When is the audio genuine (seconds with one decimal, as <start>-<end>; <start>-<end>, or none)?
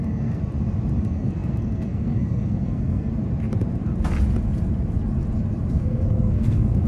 0.4-1.0; 3.1-5.7